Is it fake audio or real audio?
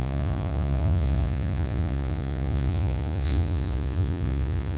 fake